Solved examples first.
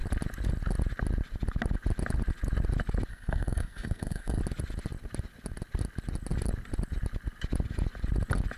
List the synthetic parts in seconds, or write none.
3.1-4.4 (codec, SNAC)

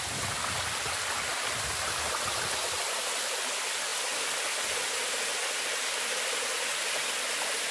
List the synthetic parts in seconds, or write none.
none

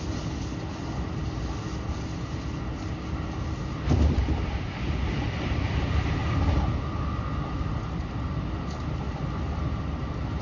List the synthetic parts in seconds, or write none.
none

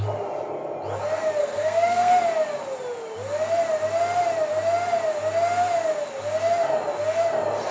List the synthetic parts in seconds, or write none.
1.4-2.1 (codec, SNAC)

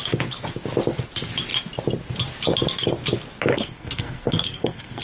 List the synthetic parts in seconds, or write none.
3.5-5.0 (codec, SNAC)